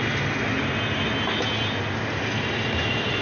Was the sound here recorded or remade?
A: recorded